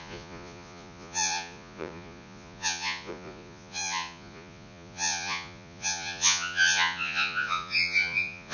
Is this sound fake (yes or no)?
yes